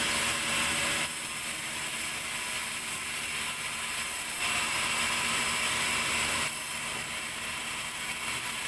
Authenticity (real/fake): real